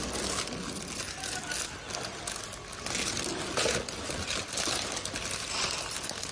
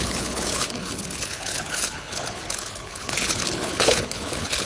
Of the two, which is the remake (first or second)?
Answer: second